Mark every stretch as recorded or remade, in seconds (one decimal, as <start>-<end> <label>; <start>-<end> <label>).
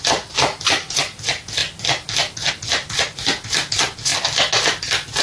0.0-5.2 recorded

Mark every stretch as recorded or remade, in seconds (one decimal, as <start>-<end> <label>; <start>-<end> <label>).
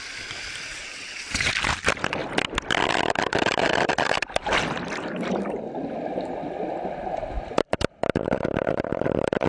0.0-0.7 recorded; 0.7-1.5 remade; 1.5-9.5 recorded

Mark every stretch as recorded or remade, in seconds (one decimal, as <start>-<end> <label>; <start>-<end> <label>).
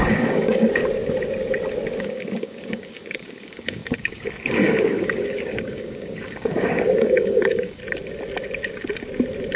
0.0-0.8 remade; 0.8-2.0 recorded; 2.0-7.8 remade; 7.8-9.6 recorded